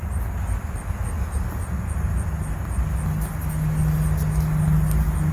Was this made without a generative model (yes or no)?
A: yes